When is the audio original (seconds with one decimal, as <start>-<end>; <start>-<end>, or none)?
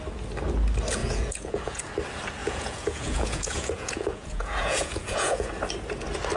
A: 0.0-1.0; 1.8-2.4; 5.5-6.4